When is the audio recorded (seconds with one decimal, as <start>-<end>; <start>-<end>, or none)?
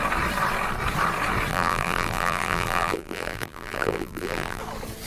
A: 0.0-1.5; 4.6-5.1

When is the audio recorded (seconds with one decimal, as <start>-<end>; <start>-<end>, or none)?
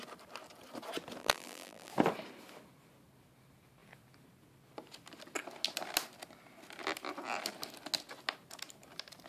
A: 0.0-1.2; 1.9-9.3